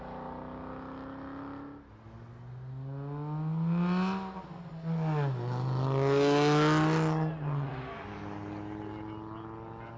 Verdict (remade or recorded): recorded